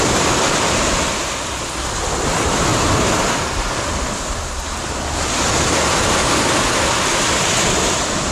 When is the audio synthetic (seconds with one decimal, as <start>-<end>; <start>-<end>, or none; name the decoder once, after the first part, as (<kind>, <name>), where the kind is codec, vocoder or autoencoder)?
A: 2.7-3.2 (vocoder, BigVGAN v2)